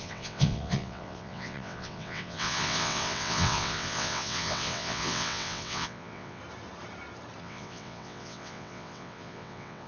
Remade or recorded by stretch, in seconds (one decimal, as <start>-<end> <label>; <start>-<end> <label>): 0.0-6.4 remade; 6.4-7.4 recorded; 7.4-9.9 remade